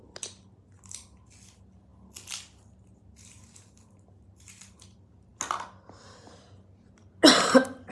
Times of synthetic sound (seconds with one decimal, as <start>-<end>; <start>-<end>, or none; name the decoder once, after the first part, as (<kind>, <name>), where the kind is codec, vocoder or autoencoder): none